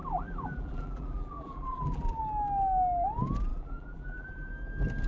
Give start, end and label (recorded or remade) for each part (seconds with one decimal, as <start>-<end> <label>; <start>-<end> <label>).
0.0-2.2 remade; 2.2-3.5 recorded; 3.5-4.5 remade; 4.5-5.1 recorded